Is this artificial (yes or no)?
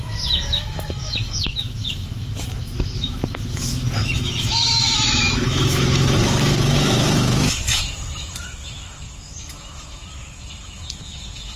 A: yes